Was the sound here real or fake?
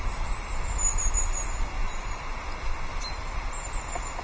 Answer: real